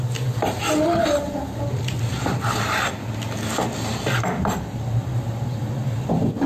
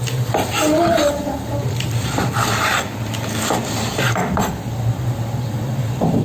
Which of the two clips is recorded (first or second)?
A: first